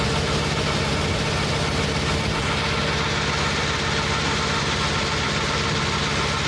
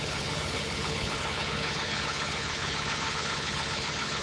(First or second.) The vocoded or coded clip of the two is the second